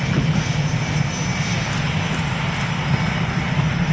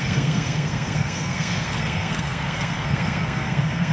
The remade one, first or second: second